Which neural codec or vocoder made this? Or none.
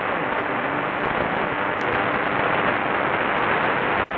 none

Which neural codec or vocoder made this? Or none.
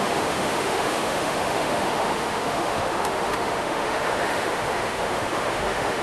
autoencoder, DAC-VAE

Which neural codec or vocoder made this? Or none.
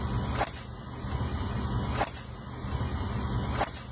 none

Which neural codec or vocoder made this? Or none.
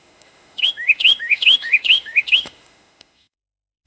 autoencoder, DAC-VAE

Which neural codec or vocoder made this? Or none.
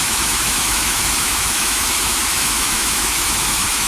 autoencoder, DAC-VAE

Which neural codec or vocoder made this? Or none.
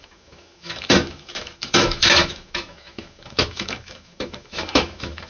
autoencoder, DAC-VAE